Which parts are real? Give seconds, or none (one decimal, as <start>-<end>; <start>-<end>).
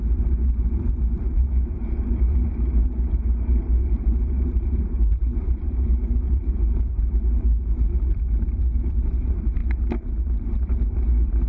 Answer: 9.6-10.3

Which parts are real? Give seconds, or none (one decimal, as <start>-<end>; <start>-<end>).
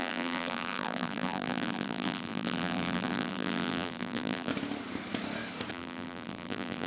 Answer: 4.5-5.7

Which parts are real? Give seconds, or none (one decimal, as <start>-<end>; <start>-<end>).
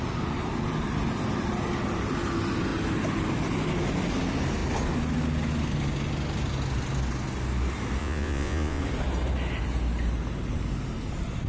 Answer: 0.0-8.0; 8.8-11.5